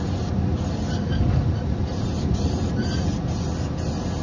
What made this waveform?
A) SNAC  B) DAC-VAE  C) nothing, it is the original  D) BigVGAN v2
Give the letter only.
C